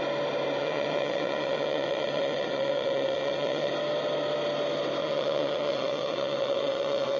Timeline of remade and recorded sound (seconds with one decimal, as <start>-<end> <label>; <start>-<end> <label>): 0.0-0.6 recorded; 0.6-3.7 remade; 3.7-5.0 recorded; 5.0-7.2 remade